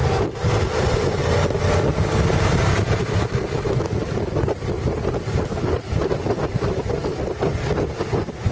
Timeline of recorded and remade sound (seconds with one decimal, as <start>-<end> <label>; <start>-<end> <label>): 0.0-8.5 recorded